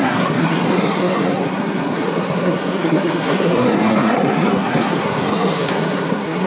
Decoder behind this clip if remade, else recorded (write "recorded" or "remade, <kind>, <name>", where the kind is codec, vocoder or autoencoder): remade, codec, SNAC